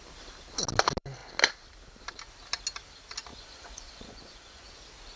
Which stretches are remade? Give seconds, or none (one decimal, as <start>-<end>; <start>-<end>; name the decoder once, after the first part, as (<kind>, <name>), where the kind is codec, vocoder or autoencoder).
3.3-4.8 (vocoder, Vocos)